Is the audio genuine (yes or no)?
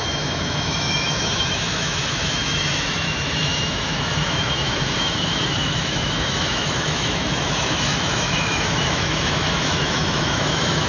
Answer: no